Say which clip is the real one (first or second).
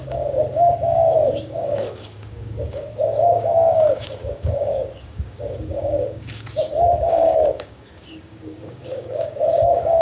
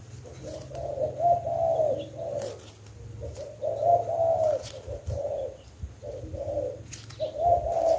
second